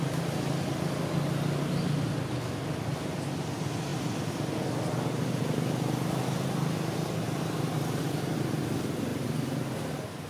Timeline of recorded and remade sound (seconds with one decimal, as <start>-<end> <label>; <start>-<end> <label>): 0.0-10.3 recorded